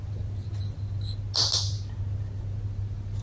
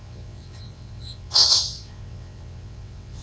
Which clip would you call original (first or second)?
first